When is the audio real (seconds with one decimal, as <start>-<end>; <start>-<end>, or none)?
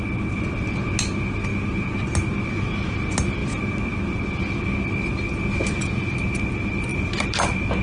0.0-3.4; 4.6-6.9